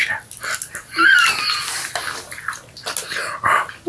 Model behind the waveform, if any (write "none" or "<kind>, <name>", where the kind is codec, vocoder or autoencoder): none